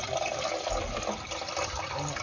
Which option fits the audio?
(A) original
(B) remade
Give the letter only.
A